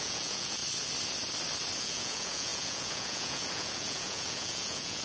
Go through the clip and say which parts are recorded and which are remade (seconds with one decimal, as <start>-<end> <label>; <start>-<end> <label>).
0.0-0.6 remade; 0.6-1.8 recorded; 1.8-5.0 remade

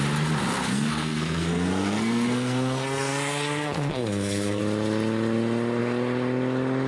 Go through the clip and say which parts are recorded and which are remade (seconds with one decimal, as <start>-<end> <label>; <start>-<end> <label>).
0.0-0.7 recorded; 0.7-4.6 remade; 4.6-6.9 recorded

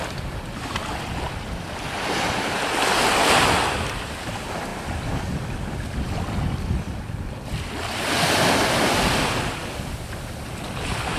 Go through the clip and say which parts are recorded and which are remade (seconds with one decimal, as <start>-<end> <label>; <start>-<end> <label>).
0.0-11.2 recorded

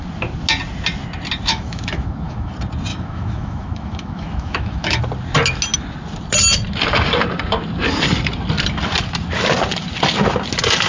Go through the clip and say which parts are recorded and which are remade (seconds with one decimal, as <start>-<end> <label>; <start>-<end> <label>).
0.0-1.5 recorded; 1.5-2.5 remade; 2.5-2.9 recorded; 2.9-5.0 remade; 5.0-10.9 recorded